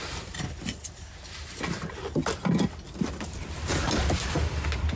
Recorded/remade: recorded